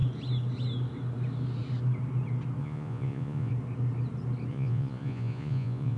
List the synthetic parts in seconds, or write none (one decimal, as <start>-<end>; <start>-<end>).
2.6-3.5; 4.5-6.0